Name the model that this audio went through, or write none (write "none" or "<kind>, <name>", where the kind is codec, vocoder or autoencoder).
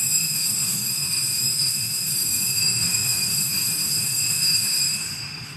autoencoder, DAC-VAE